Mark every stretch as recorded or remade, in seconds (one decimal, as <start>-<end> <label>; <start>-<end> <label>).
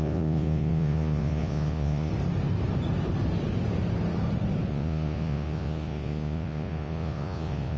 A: 0.0-2.1 remade; 2.1-4.7 recorded; 4.7-7.8 remade